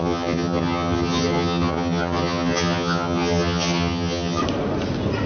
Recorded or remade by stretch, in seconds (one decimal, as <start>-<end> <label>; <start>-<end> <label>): 0.0-4.4 remade; 4.4-5.3 recorded